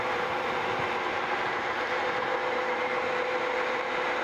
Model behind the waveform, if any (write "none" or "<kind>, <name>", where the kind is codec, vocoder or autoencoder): vocoder, BigVGAN v2